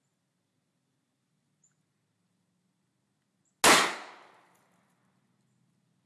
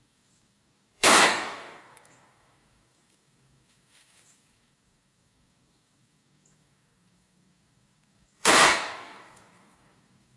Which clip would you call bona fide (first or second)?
first